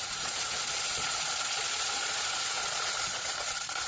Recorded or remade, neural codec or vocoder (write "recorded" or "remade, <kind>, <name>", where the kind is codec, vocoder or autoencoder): remade, vocoder, Vocos